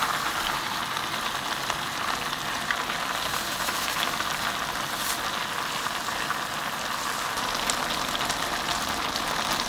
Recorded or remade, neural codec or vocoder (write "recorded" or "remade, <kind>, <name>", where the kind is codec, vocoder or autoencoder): recorded